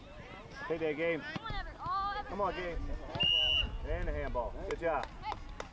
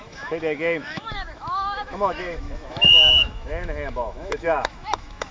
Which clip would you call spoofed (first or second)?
second